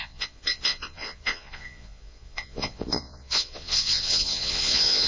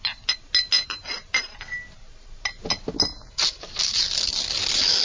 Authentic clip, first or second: second